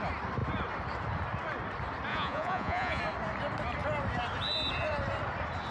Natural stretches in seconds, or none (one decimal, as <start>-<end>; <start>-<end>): 0.0-2.1; 3.0-5.7